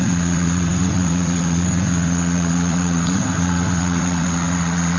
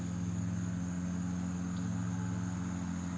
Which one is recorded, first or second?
second